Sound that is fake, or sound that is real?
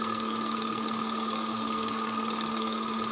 fake